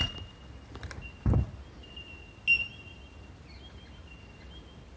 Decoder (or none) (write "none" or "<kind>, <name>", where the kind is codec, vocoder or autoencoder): none